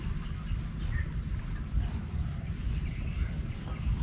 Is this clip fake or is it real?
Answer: real